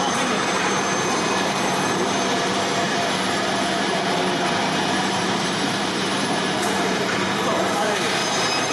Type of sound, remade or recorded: remade